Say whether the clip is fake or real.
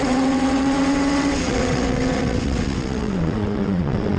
fake